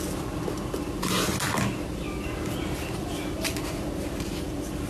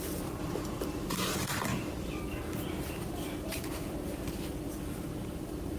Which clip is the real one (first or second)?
first